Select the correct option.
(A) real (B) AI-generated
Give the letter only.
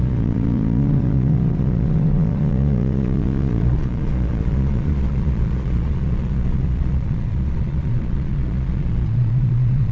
B